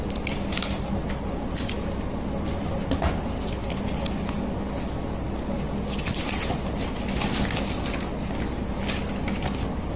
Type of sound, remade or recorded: recorded